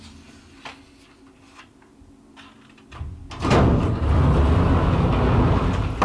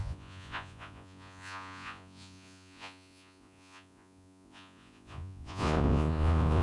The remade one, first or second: second